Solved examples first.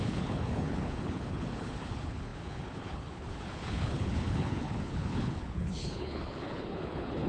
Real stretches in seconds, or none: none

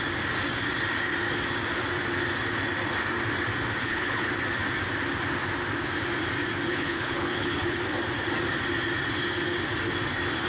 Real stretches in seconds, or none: 0.0-3.8; 4.3-6.7; 7.8-10.5

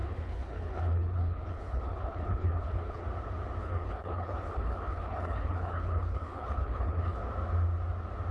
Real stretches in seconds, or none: 3.0-3.6; 7.2-8.3

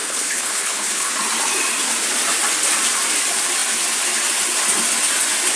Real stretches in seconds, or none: 1.1-5.6

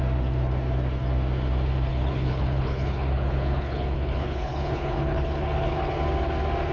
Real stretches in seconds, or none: 0.0-1.9; 5.9-6.7